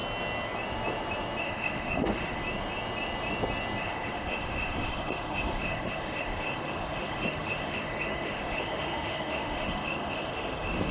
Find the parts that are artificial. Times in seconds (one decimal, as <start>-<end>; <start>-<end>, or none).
1.4-2.4; 3.8-10.9